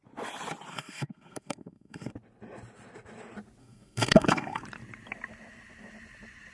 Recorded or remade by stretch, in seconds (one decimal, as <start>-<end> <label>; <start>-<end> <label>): 0.0-0.7 recorded; 0.7-2.1 remade; 2.1-3.6 recorded; 3.6-4.6 remade; 4.6-6.5 recorded